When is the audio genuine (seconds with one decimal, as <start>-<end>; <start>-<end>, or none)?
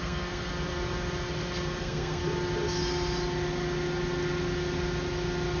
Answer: 0.5-1.8; 2.2-5.6